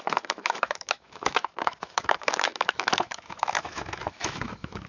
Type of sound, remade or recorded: remade